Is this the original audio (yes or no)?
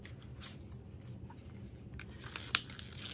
yes